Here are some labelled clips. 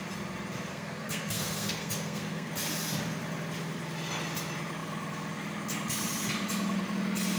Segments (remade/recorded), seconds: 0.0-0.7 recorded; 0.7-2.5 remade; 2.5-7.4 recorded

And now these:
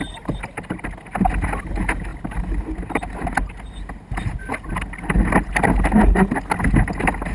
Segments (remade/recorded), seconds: 0.0-7.3 recorded

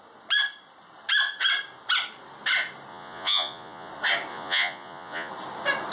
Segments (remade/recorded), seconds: 0.0-2.9 recorded; 2.9-3.9 remade; 3.9-4.3 recorded; 4.3-5.3 remade; 5.3-5.9 recorded

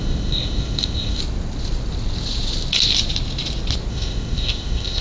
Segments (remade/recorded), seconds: 0.0-1.2 remade; 1.2-3.9 recorded; 3.9-5.0 remade

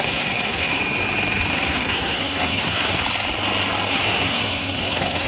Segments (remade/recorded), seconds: 0.0-0.8 remade; 0.8-1.5 recorded; 1.5-3.0 remade; 3.0-3.9 recorded; 3.9-5.3 remade

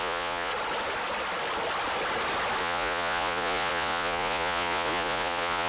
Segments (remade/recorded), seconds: 0.0-0.5 remade; 0.5-2.6 recorded; 2.6-5.7 remade

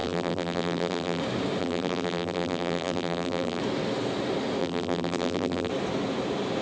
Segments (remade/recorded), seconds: 0.0-1.2 remade; 1.2-1.6 recorded; 1.6-3.6 remade; 3.6-4.6 recorded; 4.6-5.7 remade; 5.7-6.6 recorded

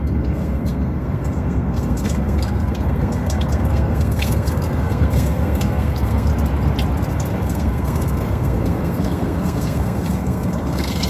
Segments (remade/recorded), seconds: 0.0-6.3 remade; 6.3-7.1 recorded; 7.1-11.1 remade